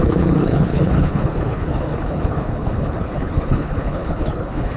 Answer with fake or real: fake